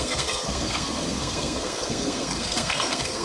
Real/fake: fake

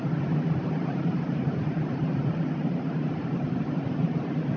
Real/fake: fake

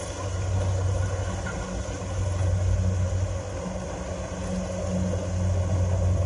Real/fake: real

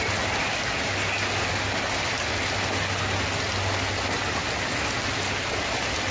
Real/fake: real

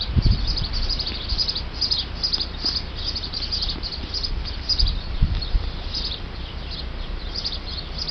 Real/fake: real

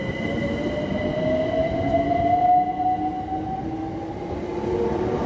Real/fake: real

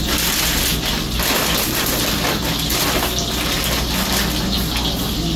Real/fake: real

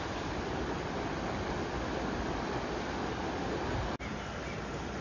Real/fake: real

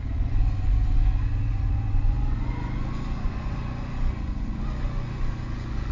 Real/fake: fake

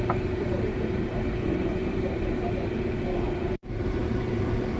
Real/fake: fake